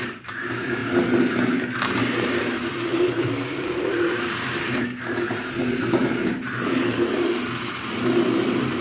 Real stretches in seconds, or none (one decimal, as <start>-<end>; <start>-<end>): 0.8-2.0